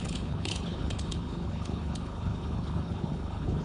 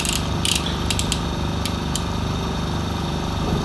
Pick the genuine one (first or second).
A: second